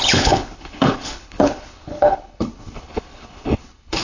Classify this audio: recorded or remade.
remade